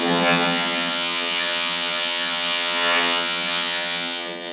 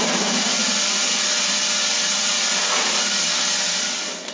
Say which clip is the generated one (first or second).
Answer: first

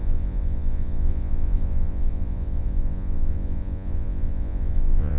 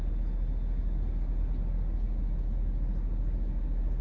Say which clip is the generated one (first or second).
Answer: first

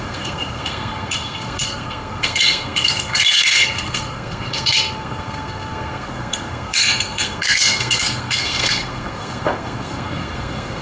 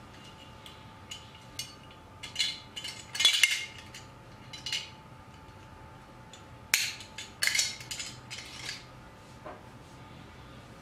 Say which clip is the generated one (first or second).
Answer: first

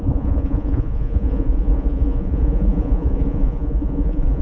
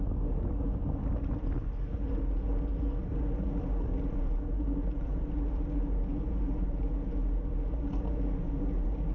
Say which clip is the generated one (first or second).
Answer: first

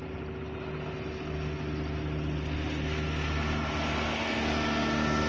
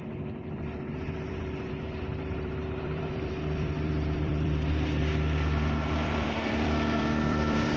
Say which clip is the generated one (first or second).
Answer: second